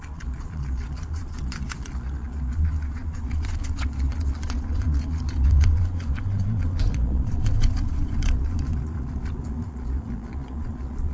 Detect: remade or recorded remade